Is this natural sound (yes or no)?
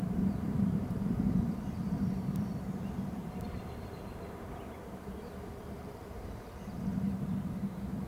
no